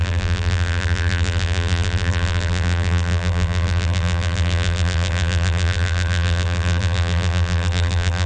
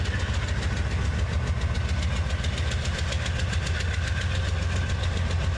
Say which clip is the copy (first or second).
first